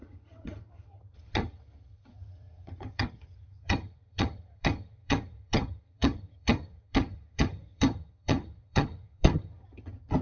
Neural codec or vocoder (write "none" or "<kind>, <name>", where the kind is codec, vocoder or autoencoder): vocoder, HiFi-GAN